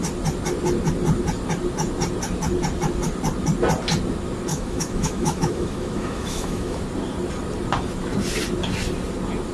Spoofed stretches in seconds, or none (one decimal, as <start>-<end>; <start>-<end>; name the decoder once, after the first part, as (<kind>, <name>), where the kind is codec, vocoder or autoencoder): 4.5-6.8 (autoencoder, DAC-VAE)